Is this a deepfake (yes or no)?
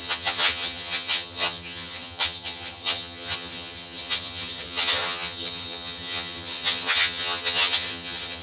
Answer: yes